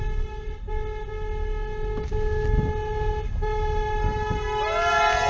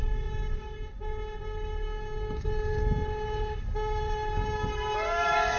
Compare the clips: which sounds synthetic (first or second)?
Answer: second